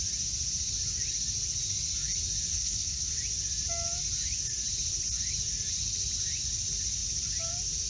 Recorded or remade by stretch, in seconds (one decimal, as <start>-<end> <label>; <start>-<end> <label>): 0.0-2.5 recorded; 2.5-3.1 remade; 3.1-7.9 recorded